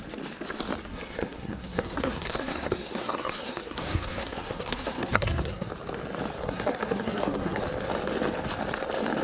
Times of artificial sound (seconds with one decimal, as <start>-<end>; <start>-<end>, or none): 0.9-5.7; 6.4-7.6